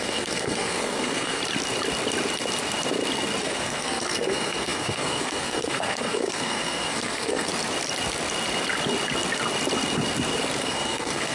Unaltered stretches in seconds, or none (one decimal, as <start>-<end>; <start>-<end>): 1.4-3.4; 7.5-10.6